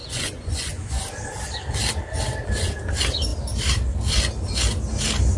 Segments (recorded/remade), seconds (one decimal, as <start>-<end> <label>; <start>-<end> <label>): 0.0-1.0 remade; 1.0-5.4 recorded